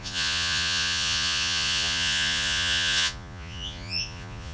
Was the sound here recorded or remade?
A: remade